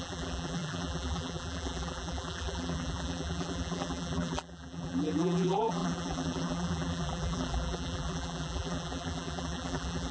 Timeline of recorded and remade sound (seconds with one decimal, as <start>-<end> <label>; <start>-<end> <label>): 0.0-10.1 remade